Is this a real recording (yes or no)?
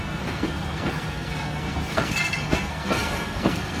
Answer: no